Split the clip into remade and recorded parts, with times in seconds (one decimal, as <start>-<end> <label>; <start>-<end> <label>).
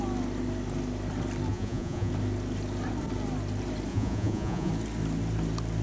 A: 0.0-1.5 recorded; 1.5-2.1 remade; 2.1-3.9 recorded; 3.9-4.7 remade; 4.7-5.8 recorded